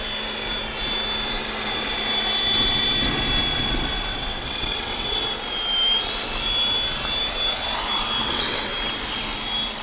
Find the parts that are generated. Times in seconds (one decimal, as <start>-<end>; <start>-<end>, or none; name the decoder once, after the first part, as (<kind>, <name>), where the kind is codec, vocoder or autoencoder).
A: 4.1-5.2 (vocoder, WaveNeXt); 8.2-8.7